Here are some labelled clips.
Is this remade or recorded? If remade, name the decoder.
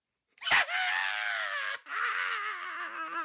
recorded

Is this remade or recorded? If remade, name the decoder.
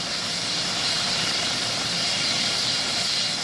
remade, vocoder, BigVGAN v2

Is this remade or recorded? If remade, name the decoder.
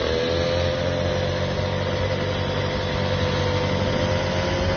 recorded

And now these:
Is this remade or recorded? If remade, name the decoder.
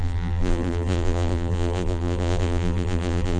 remade, vocoder, BigVGAN v2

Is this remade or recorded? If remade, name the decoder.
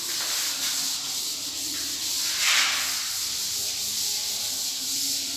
recorded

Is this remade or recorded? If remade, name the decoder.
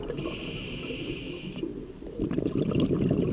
recorded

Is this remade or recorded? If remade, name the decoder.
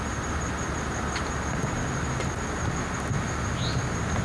recorded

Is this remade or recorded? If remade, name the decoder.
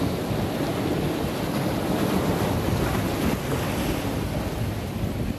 recorded